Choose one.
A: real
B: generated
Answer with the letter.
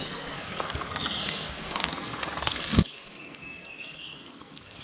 B